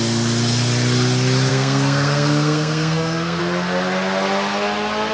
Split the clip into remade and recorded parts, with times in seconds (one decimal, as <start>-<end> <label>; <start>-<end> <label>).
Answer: 0.0-1.5 recorded; 1.5-3.4 remade; 3.4-5.1 recorded